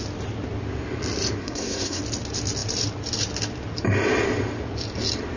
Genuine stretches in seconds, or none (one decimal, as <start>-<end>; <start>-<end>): 0.0-1.4; 2.0-5.4